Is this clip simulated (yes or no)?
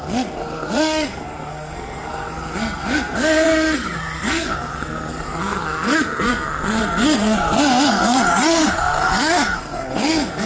yes